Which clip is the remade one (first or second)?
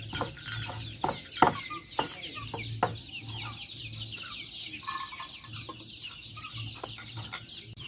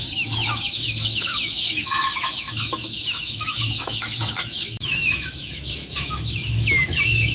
second